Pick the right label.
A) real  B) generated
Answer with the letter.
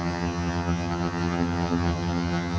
B